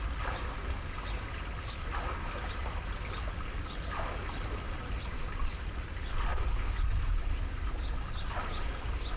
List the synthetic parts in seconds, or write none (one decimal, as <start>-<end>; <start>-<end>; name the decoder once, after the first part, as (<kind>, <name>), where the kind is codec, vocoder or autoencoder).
none